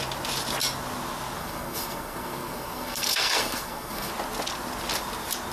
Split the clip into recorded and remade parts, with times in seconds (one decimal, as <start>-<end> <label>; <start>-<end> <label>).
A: 0.0-1.4 recorded; 1.4-4.1 remade; 4.1-5.5 recorded